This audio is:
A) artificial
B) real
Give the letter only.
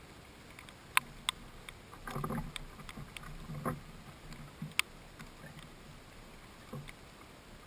B